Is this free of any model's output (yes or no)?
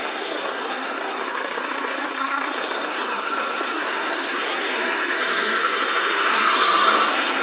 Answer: no